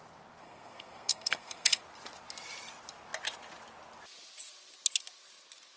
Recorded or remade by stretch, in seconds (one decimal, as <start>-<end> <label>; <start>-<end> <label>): 0.0-0.4 recorded; 0.4-1.8 remade; 1.8-5.8 recorded